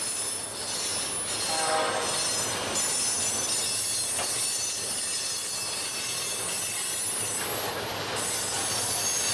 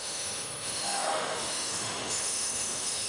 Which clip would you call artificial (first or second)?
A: second